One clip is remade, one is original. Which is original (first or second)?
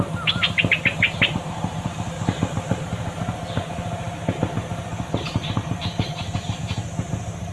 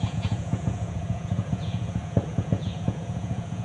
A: first